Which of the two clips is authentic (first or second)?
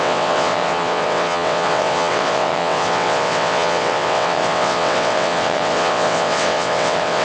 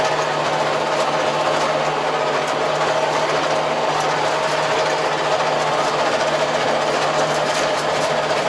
second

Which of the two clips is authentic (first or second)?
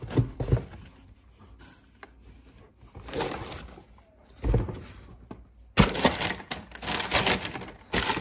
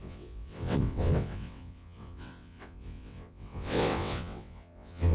first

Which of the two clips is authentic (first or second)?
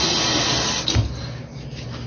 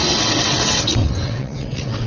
first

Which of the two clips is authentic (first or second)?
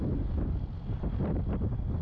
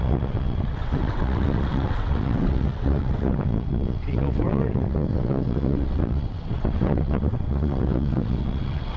first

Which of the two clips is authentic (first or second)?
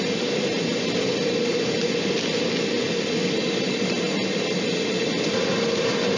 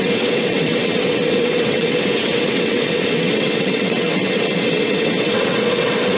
first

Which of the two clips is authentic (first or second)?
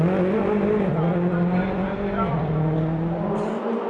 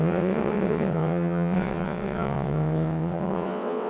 first